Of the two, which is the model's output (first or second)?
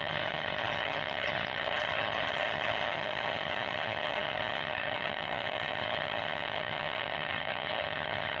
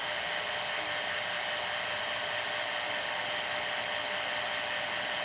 first